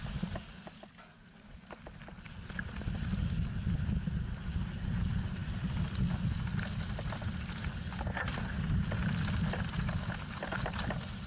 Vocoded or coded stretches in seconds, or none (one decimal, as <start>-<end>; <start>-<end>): none